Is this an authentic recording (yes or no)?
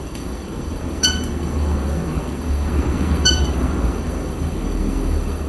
no